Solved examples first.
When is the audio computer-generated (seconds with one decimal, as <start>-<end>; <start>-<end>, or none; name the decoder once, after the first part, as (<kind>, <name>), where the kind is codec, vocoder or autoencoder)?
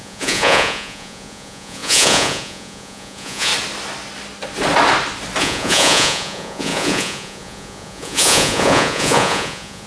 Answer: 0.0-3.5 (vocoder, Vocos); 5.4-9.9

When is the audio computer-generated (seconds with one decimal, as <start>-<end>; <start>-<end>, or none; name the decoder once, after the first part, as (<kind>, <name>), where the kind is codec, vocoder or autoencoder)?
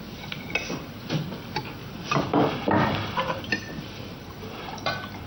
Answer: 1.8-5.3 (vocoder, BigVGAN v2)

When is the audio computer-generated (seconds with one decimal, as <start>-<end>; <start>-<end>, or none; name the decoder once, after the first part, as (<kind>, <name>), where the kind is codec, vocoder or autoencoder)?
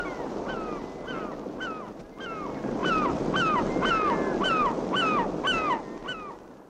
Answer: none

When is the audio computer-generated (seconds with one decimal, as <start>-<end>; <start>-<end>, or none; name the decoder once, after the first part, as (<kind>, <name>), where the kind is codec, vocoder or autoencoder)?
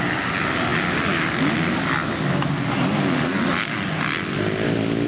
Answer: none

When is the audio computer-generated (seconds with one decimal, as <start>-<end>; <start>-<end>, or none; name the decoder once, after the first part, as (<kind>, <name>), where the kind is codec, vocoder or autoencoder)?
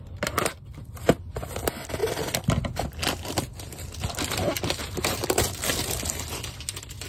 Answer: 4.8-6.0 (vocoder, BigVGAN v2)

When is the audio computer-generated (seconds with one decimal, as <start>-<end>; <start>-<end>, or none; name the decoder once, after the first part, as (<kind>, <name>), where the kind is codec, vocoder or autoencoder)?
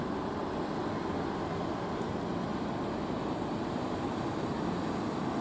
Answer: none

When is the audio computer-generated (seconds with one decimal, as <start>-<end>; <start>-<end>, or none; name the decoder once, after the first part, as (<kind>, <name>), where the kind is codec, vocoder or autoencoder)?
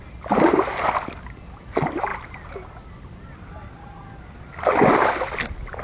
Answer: none